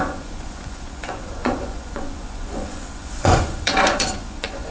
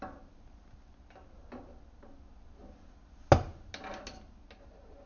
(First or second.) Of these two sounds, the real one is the second